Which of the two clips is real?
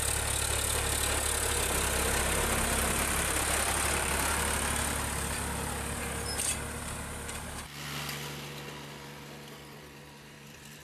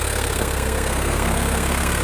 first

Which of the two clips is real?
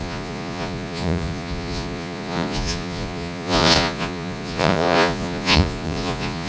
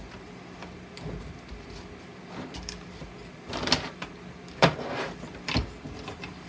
second